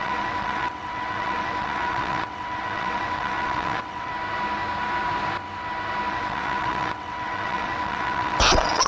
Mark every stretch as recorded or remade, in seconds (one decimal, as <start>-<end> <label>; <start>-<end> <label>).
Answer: 0.0-4.1 remade; 4.1-6.1 recorded; 6.1-8.9 remade